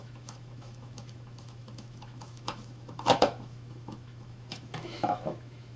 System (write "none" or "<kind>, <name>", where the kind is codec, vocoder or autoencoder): autoencoder, DAC-VAE